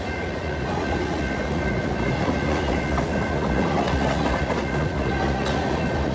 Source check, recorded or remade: remade